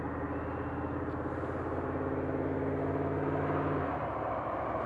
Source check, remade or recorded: recorded